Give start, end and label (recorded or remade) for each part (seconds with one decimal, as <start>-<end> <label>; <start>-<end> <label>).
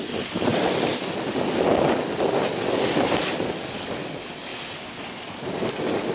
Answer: 0.0-6.1 recorded